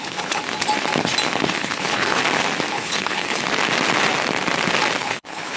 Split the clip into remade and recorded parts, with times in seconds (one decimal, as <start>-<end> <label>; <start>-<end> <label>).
0.0-0.4 remade; 0.4-1.4 recorded; 1.4-2.2 remade; 2.2-2.7 recorded; 2.7-3.4 remade; 3.4-5.0 recorded; 5.0-5.6 remade